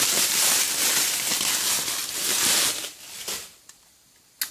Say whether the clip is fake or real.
real